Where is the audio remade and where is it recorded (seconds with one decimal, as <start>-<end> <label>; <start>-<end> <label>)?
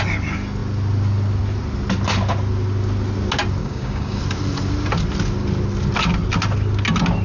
0.0-3.6 recorded; 3.6-4.2 remade; 4.2-7.2 recorded